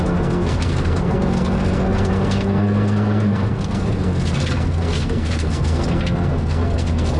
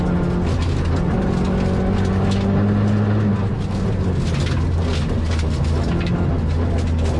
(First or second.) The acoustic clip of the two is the second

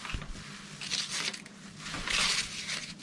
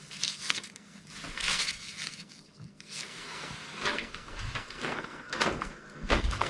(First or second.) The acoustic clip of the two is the first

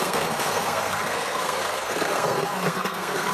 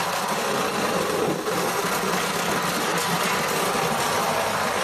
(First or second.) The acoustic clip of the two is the second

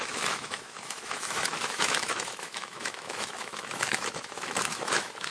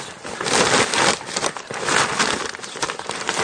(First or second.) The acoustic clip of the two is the second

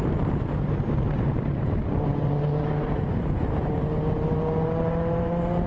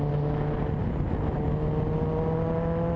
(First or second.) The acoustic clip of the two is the second